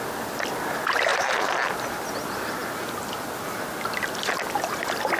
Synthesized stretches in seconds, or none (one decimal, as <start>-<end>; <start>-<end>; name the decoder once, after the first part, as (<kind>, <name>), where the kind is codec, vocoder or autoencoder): none